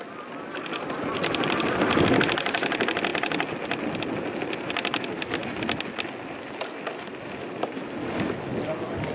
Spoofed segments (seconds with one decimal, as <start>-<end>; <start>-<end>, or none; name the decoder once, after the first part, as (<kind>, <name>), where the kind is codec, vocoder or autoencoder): none